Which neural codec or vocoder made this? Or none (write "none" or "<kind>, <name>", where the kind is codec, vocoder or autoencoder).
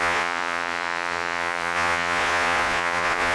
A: vocoder, Vocos